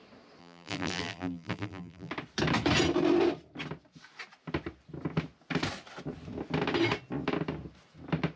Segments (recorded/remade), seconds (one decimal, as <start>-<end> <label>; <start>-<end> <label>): 0.0-0.4 recorded; 0.4-2.1 remade; 2.1-8.4 recorded